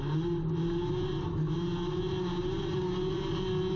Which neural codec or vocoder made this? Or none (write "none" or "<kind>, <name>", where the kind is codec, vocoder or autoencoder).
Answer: none